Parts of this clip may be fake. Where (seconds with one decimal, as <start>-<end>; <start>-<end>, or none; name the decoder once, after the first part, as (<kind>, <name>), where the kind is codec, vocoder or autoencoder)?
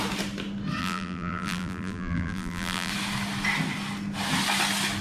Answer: 0.8-2.9 (vocoder, BigVGAN v2)